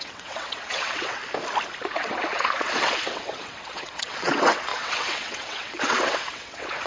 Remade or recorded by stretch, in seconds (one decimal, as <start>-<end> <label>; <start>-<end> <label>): 0.0-1.2 remade; 1.2-1.9 recorded; 1.9-6.9 remade